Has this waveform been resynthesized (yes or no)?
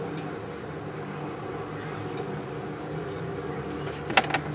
no